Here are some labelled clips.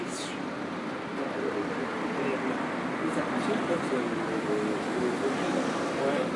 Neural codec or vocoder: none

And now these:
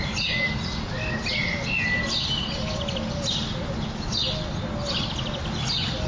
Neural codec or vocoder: none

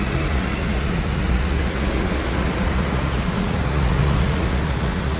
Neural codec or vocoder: vocoder, Vocos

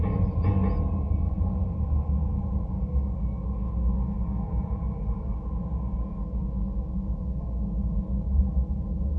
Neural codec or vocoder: none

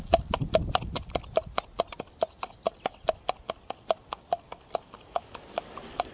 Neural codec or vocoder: none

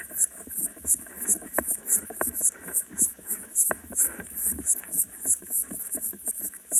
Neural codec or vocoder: autoencoder, DAC-VAE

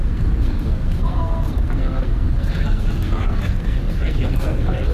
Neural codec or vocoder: codec, SNAC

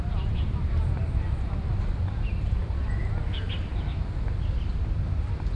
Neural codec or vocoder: none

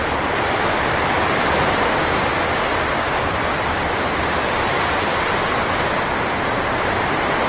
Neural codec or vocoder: none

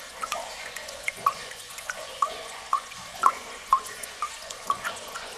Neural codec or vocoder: vocoder, Vocos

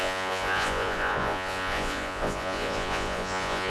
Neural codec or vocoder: vocoder, Vocos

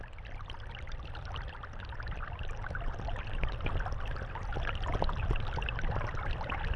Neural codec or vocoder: none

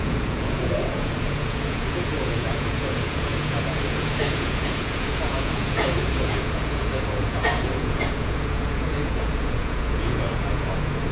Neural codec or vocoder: vocoder, Vocos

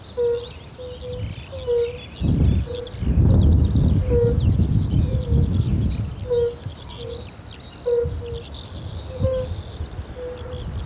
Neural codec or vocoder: none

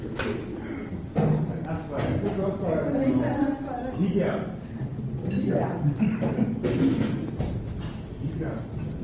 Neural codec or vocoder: none